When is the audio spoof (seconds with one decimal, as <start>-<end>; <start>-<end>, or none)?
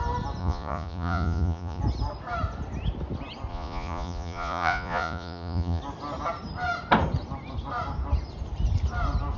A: 0.4-1.8; 3.5-5.8